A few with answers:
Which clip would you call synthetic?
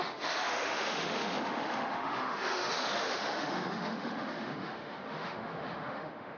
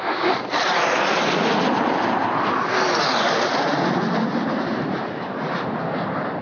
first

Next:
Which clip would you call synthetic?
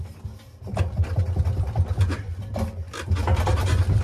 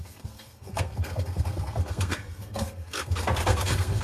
second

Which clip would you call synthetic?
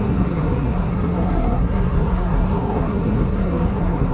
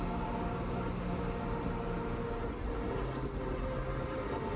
first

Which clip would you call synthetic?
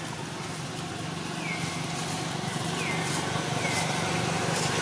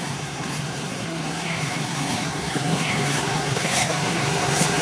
second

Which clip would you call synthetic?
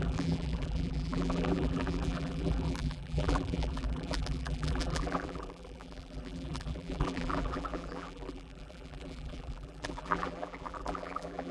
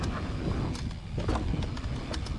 first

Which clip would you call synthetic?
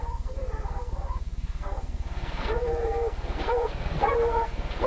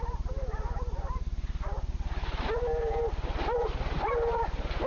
first